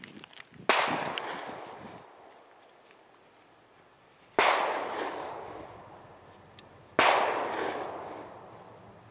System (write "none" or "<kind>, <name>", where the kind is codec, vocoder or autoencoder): none